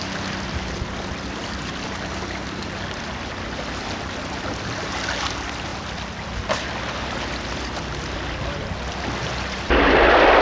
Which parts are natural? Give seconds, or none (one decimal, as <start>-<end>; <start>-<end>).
0.0-10.4